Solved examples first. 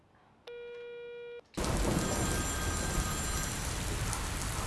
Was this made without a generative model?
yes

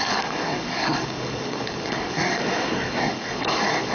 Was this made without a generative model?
no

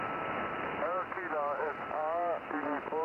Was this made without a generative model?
yes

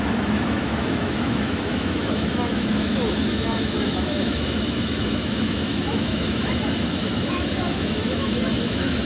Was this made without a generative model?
no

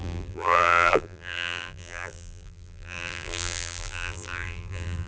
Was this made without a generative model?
no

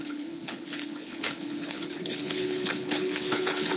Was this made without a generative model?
no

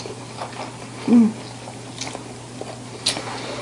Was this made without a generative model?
yes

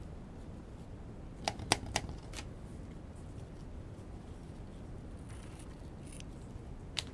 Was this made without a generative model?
yes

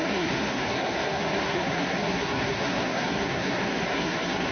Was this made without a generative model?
no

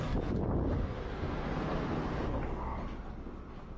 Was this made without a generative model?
yes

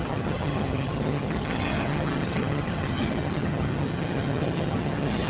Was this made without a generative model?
no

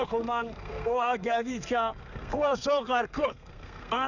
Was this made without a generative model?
no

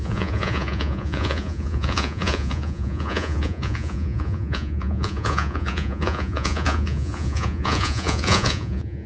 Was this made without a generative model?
no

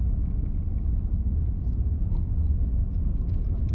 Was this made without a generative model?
yes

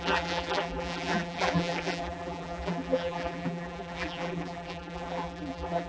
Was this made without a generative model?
no